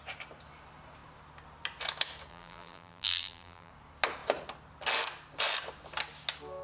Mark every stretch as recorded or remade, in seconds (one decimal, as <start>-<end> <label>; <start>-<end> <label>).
0.0-2.3 recorded; 2.3-3.7 remade; 3.7-6.6 recorded